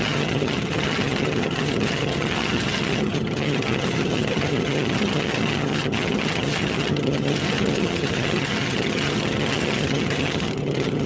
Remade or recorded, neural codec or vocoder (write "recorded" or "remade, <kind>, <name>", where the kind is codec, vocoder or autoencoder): remade, vocoder, HiFi-GAN